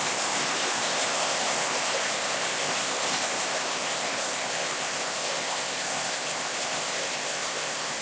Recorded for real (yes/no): no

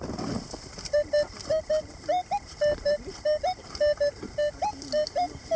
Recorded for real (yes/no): yes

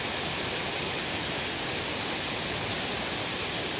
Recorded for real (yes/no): yes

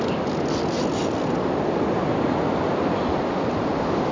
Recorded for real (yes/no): yes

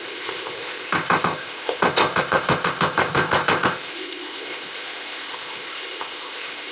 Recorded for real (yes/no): no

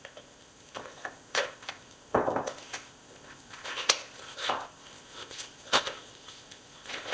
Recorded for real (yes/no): no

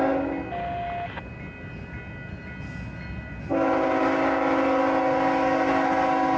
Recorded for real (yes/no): yes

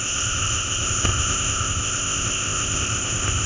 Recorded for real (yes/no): no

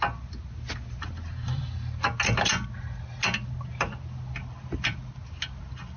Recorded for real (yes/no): yes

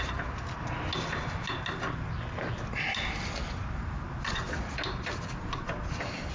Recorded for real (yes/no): yes